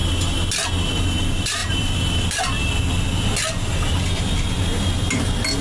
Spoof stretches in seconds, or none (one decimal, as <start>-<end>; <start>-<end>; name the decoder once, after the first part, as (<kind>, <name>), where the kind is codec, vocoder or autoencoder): none